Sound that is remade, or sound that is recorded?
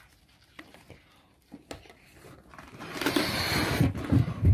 recorded